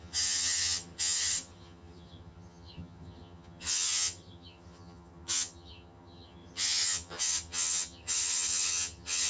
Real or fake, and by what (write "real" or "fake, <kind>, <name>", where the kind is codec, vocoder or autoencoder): fake, vocoder, HiFi-GAN